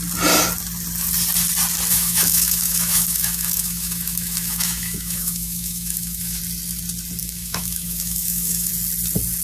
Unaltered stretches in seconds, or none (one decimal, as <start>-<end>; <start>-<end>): 0.0-1.9; 6.4-7.2; 8.7-9.4